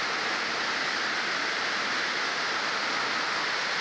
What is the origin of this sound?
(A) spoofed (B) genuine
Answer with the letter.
B